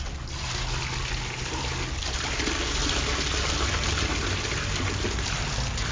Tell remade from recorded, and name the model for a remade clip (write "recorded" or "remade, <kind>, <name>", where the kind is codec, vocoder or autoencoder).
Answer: recorded